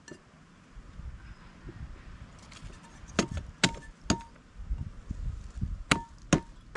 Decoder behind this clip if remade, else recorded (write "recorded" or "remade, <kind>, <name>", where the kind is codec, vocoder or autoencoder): recorded